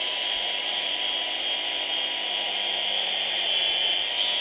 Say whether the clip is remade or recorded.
recorded